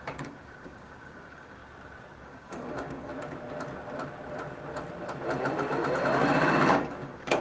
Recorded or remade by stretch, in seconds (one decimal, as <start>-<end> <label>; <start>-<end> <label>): 0.0-1.6 remade; 1.6-2.2 recorded; 2.2-3.1 remade; 3.1-6.7 recorded; 6.7-7.4 remade